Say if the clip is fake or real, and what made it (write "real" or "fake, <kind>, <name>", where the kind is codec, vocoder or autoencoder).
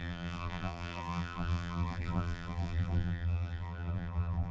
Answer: fake, vocoder, BigVGAN v2